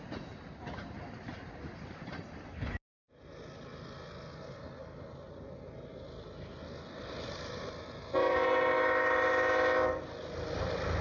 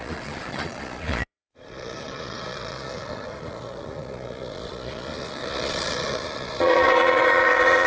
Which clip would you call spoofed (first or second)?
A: second